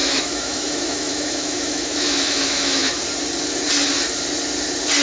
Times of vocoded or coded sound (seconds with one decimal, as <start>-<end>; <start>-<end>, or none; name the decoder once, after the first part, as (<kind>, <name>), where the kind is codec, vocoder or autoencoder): 0.0-3.0 (autoencoder, DAC-VAE)